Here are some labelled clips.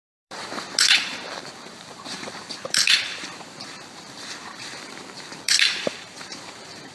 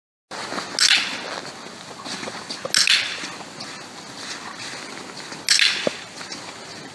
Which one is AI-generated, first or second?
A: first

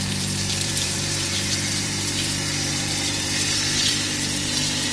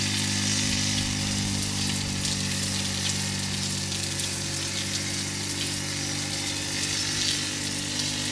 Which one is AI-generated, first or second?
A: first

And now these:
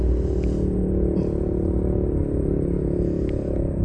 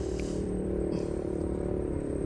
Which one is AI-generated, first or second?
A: second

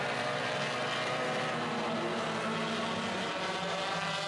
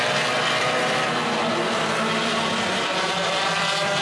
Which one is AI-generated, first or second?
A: second